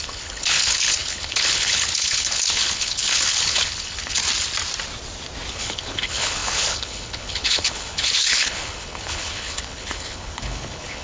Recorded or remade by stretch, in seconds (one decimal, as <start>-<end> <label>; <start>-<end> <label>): 0.0-4.2 remade; 4.2-5.5 recorded; 5.5-11.0 remade